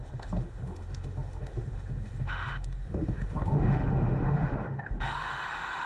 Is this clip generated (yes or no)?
yes